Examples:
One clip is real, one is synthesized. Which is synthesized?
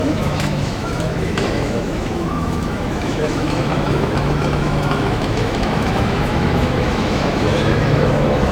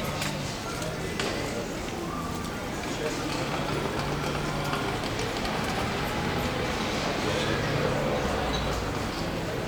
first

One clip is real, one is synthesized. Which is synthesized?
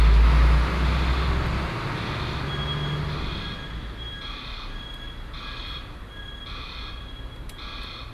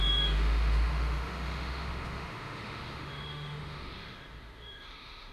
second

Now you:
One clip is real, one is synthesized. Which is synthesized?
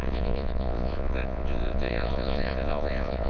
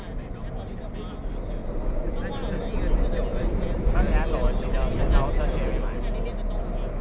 first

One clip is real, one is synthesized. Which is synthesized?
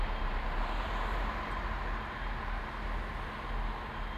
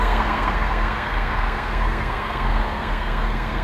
second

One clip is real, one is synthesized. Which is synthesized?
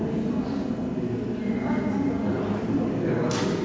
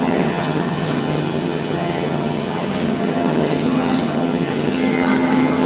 second